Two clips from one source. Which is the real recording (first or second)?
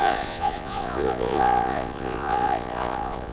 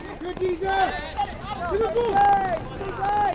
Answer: second